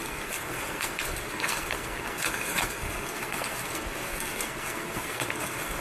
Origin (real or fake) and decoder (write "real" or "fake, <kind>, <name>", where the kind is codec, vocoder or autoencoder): fake, codec, SNAC